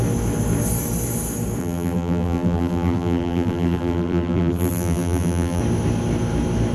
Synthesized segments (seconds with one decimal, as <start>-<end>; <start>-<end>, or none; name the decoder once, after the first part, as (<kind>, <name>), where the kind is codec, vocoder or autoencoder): 1.6-5.6 (vocoder, BigVGAN v2)